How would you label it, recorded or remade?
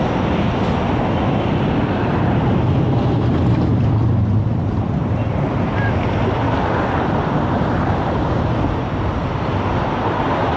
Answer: remade